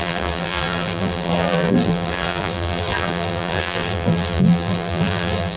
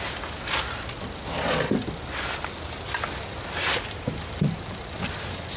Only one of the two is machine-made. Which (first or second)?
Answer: first